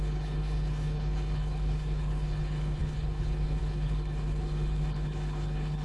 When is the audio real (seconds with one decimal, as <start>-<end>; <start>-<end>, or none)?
none